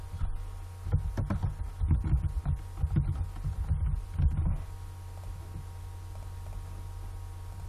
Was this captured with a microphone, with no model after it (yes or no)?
yes